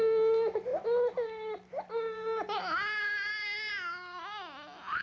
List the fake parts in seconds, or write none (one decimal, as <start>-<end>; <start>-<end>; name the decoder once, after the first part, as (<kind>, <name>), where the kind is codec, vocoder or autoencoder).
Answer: none